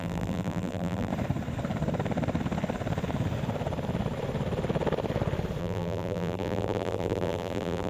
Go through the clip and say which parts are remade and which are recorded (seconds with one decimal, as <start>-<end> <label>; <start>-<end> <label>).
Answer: 0.0-1.1 remade; 1.1-5.6 recorded; 5.6-7.9 remade